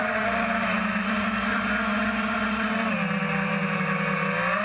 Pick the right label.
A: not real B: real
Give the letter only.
B